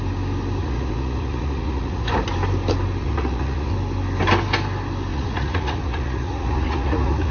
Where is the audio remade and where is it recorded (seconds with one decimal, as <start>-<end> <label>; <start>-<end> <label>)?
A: 0.0-0.6 recorded; 0.6-2.1 remade; 2.1-3.0 recorded; 3.0-3.7 remade; 3.7-5.1 recorded; 5.1-7.3 remade